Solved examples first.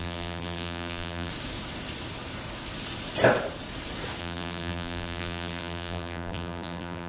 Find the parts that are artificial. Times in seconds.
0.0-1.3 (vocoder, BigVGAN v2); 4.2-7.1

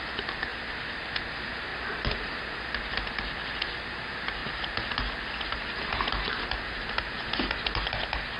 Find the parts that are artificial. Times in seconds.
1.7-2.3 (vocoder, BigVGAN v2); 4.4-6.1

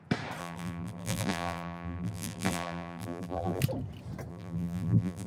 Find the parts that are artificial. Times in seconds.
0.4-3.6 (vocoder, BigVGAN v2); 4.3-5.3

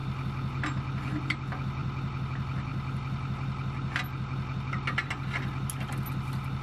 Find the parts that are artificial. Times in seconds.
none